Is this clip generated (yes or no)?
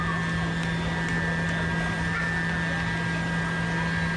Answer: no